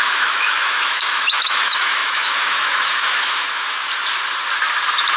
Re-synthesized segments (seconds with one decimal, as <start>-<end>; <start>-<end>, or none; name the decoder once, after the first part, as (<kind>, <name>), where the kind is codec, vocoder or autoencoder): 0.0-3.9 (autoencoder, DAC-VAE)